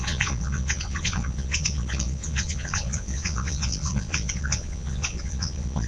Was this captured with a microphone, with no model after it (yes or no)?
no